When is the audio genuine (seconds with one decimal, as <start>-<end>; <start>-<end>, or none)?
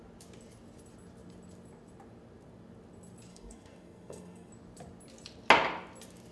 0.0-3.3; 4.5-6.3